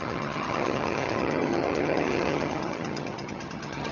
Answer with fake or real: fake